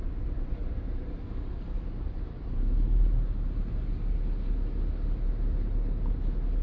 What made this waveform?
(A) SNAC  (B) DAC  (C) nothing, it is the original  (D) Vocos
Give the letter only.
C